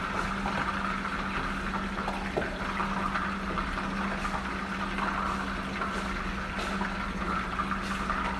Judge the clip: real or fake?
real